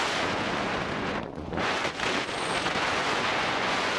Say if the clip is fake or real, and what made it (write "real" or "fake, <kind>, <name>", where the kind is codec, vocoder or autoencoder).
fake, vocoder, Vocos